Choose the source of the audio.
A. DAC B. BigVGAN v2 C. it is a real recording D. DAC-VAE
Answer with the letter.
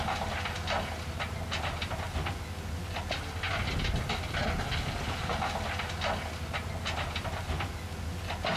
C